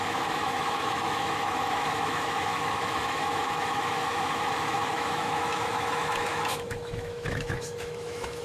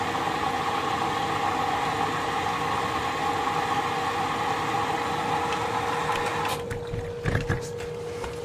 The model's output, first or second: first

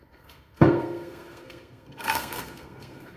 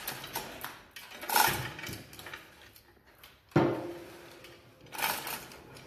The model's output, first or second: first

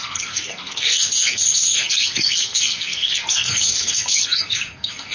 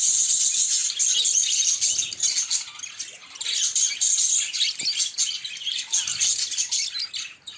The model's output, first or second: first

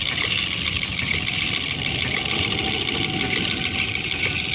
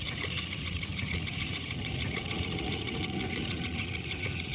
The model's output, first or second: second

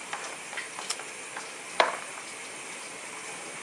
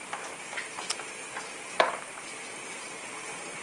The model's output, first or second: first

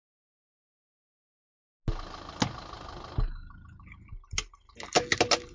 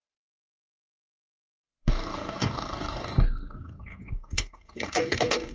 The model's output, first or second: second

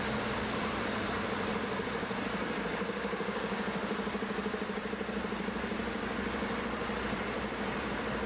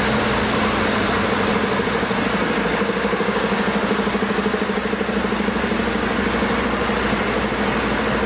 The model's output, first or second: first